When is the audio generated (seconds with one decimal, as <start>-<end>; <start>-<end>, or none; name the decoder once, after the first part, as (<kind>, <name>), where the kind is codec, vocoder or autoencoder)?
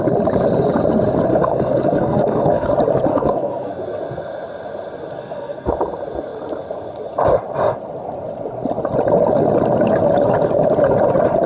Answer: 1.3-2.7 (codec, SNAC); 3.1-3.7; 5.2-5.7